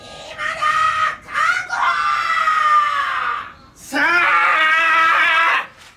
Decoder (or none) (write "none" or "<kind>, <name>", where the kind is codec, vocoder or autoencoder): none